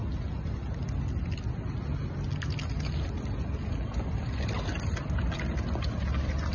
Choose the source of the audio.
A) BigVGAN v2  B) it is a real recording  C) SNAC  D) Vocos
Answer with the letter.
B